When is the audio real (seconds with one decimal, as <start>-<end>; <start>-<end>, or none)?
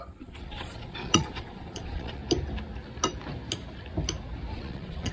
2.2-4.5